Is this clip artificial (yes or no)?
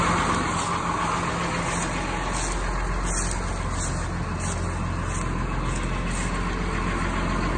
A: no